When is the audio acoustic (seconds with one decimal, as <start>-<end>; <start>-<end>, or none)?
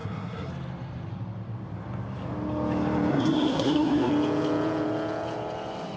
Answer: 0.5-3.1; 4.1-6.0